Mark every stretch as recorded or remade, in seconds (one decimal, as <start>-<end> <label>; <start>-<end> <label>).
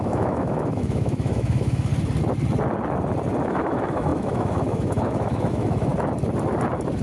0.0-1.9 remade; 1.9-3.4 recorded; 3.4-5.9 remade; 5.9-7.0 recorded